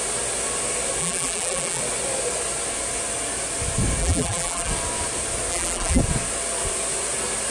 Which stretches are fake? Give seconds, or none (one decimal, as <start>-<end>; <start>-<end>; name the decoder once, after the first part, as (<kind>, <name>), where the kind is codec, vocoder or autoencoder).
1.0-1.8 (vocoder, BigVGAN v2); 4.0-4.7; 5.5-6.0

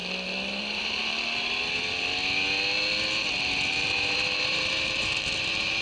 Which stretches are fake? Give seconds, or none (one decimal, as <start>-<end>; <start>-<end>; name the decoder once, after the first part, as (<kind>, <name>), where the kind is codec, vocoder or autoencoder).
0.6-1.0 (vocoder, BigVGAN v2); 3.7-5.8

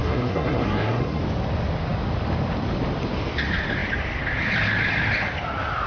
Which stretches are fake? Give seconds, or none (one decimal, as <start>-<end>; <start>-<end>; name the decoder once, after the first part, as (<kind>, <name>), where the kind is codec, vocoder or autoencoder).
0.0-1.2 (codec, SNAC)

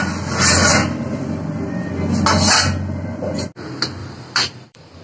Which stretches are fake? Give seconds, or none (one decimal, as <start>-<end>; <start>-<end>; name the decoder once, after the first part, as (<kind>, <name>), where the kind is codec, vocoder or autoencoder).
4.0-5.0 (vocoder, BigVGAN v2)